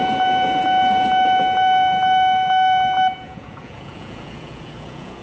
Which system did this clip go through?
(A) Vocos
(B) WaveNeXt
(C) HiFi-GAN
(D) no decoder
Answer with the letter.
A